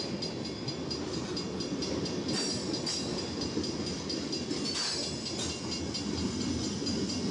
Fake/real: real